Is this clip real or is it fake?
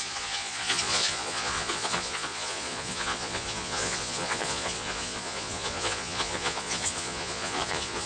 fake